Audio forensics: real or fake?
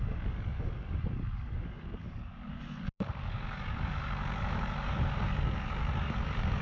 fake